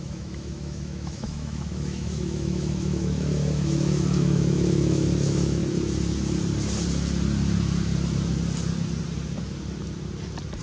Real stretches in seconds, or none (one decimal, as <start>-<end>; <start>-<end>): 5.6-10.6